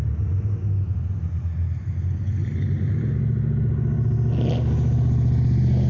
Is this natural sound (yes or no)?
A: yes